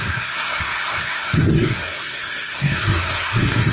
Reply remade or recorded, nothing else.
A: remade